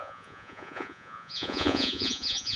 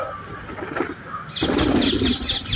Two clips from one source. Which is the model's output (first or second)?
first